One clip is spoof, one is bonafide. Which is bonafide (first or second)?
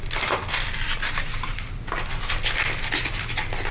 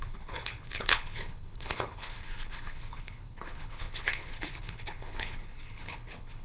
first